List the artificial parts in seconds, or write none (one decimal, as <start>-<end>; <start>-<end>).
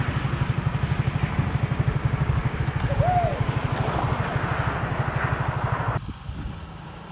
2.0-2.6